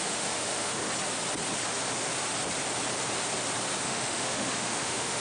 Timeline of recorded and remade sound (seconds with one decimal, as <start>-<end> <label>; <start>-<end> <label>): 0.0-0.8 remade; 0.8-3.8 recorded; 3.8-5.2 remade